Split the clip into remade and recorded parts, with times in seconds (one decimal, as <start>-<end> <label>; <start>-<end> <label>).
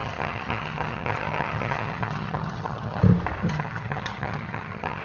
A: 0.0-3.0 remade; 3.0-3.4 recorded; 3.4-5.0 remade